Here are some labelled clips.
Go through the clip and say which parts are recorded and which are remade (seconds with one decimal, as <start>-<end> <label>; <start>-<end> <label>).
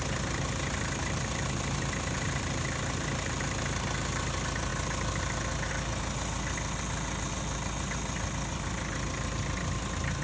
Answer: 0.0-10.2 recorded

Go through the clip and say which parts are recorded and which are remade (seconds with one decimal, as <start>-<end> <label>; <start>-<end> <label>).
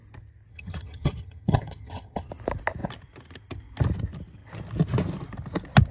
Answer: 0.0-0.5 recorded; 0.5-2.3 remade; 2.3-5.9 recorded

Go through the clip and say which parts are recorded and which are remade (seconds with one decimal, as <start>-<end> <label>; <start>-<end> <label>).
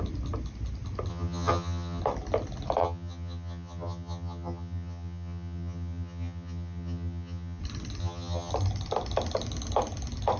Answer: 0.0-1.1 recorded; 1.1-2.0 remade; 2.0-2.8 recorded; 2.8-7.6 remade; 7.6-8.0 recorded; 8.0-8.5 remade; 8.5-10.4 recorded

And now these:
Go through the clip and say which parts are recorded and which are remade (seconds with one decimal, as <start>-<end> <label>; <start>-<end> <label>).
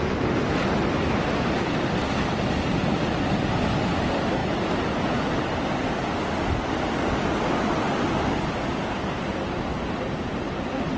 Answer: 0.0-11.0 recorded